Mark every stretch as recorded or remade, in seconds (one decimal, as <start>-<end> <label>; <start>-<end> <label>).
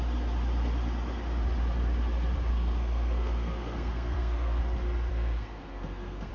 0.0-2.5 recorded; 2.5-4.6 remade; 4.6-5.1 recorded; 5.1-6.3 remade